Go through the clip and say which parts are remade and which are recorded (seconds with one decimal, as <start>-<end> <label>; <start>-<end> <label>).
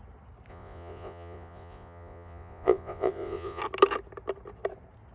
0.0-0.5 recorded; 0.5-3.6 remade; 3.6-5.1 recorded